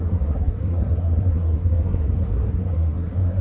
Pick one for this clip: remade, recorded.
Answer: remade